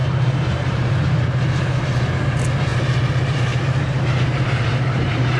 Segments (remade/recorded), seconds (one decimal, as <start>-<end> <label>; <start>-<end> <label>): 0.0-1.2 remade; 1.2-2.7 recorded; 2.7-5.4 remade